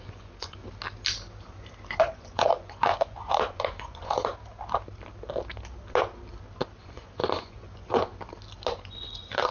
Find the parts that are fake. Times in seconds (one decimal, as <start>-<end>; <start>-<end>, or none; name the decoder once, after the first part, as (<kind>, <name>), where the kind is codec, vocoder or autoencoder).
0.0-0.6 (vocoder, Vocos); 2.0-4.3; 6.8-8.1; 8.7-9.5